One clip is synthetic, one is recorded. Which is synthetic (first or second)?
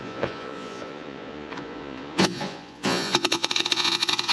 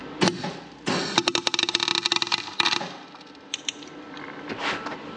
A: first